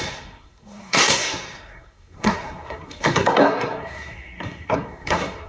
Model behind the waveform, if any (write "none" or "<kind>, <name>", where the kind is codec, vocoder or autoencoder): codec, SNAC